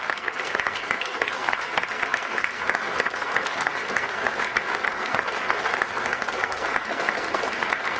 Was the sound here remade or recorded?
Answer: remade